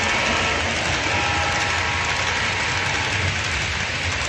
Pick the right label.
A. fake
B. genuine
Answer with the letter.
B